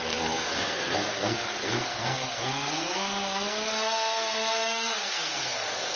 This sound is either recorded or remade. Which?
remade